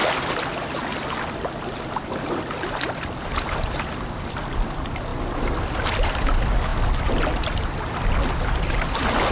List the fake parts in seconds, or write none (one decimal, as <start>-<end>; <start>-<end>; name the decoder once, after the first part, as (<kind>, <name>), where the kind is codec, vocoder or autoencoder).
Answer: none